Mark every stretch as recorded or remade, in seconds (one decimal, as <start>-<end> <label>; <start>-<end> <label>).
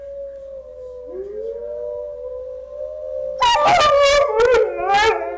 0.0-5.4 recorded